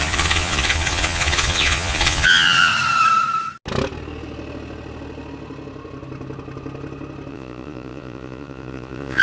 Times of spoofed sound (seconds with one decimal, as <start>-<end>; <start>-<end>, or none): 0.0-2.7; 7.3-9.2